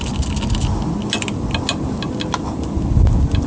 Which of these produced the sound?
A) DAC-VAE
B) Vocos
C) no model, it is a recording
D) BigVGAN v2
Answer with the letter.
C